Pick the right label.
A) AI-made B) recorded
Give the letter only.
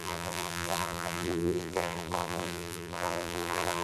A